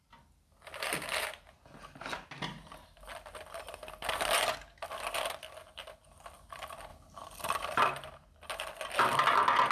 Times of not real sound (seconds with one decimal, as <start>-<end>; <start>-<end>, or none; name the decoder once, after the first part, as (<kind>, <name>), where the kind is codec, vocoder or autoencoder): none